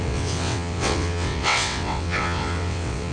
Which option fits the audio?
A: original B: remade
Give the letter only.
B